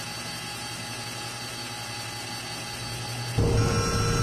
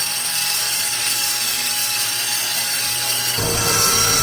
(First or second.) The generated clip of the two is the second